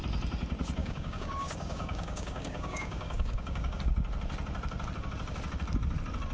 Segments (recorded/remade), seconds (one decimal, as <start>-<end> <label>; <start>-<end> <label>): 0.0-0.8 recorded; 0.8-3.8 remade; 3.8-6.3 recorded